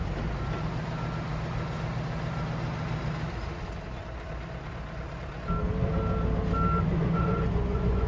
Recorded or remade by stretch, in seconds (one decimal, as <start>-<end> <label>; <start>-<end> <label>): 0.0-6.9 recorded; 6.9-8.1 remade